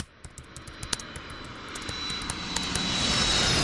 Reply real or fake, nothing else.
real